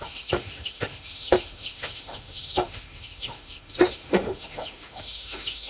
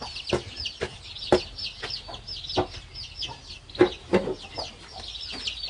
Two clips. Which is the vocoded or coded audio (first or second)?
first